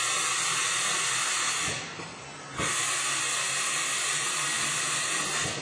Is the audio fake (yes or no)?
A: no